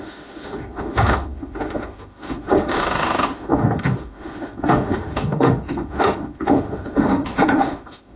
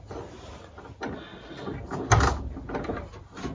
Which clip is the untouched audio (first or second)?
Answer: second